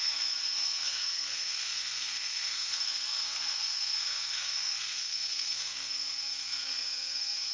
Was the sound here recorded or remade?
remade